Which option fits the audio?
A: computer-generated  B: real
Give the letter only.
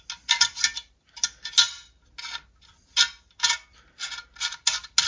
B